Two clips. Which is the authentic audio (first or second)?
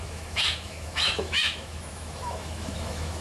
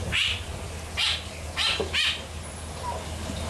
second